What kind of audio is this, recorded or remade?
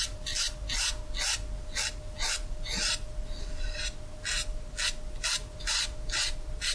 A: recorded